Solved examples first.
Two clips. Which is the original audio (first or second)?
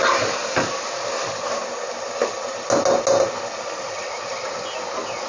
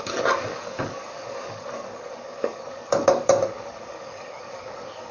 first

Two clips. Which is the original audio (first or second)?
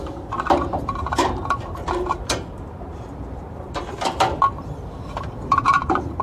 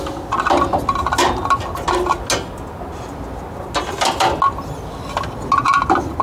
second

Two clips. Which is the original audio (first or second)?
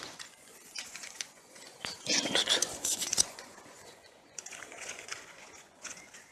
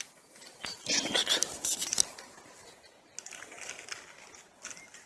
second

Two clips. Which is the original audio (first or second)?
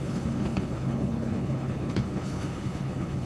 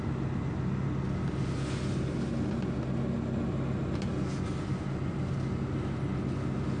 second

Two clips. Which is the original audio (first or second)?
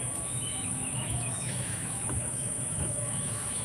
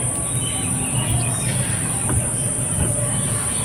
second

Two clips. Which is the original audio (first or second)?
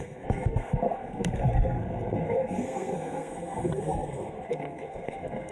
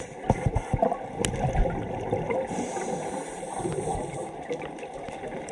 second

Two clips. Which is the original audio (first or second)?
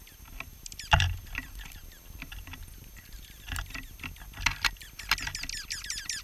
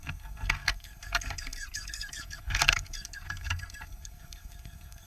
first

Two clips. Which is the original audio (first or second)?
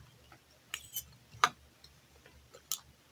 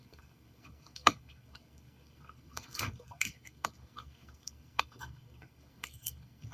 first